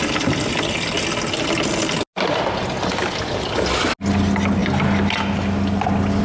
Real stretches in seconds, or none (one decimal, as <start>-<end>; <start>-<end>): 0.0-6.2